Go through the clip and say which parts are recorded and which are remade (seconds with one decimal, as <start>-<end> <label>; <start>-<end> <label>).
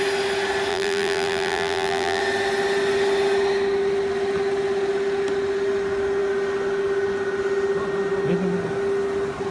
0.0-0.7 recorded; 0.7-2.2 remade; 2.2-9.5 recorded